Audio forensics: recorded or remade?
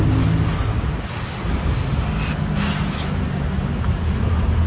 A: recorded